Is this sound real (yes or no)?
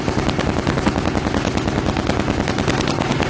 yes